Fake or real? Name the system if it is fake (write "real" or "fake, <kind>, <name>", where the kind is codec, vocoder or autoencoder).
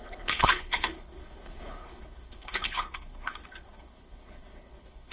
fake, codec, HILCodec